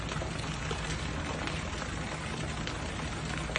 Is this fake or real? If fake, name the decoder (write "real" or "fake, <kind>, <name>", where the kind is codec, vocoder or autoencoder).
real